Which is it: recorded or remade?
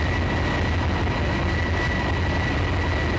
recorded